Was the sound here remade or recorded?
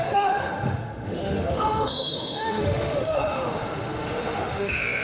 remade